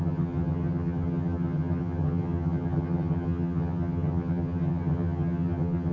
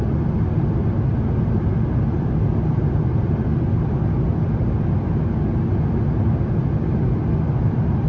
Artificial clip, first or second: first